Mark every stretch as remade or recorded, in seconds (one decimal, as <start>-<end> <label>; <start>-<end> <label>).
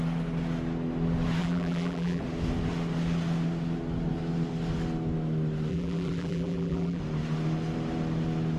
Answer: 0.0-1.4 recorded; 1.4-2.2 remade; 2.2-5.7 recorded; 5.7-7.0 remade; 7.0-8.6 recorded